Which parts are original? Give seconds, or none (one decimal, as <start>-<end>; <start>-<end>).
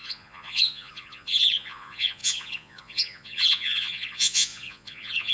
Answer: none